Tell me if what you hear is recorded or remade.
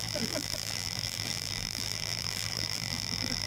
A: remade